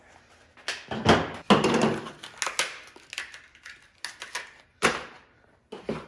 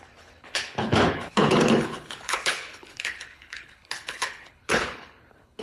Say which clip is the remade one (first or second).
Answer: second